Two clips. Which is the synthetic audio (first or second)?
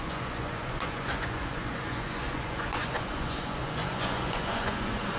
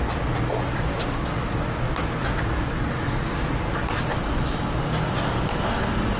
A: first